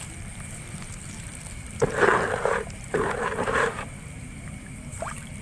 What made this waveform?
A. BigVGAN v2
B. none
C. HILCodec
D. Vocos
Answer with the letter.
A